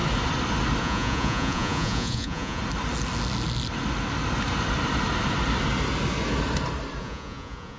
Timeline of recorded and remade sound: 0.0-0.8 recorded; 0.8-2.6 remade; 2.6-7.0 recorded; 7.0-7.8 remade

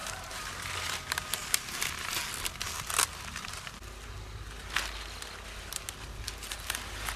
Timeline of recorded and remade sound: 0.0-2.2 remade; 2.2-6.5 recorded; 6.5-7.2 remade

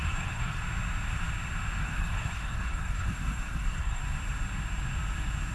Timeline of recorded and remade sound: 0.0-0.6 remade; 0.6-1.8 recorded; 1.8-4.0 remade; 4.0-5.5 recorded

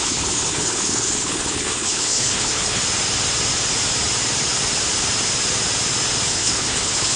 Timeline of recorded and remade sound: 0.0-2.8 remade; 2.8-6.3 recorded; 6.3-7.2 remade

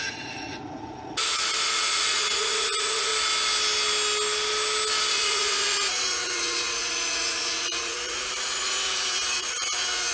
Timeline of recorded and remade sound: 0.0-3.1 remade; 3.1-5.1 recorded; 5.1-10.1 remade